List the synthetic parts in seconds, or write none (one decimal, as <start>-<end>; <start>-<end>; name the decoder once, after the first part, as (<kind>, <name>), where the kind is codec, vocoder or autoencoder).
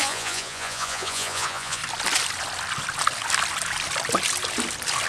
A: 0.0-1.8 (vocoder, Vocos)